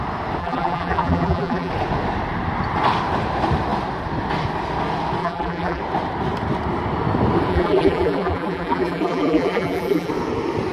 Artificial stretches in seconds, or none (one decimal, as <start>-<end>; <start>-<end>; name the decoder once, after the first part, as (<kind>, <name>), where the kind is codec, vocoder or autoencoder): 0.4-1.7 (vocoder, BigVGAN v2); 5.2-5.8; 7.5-10.1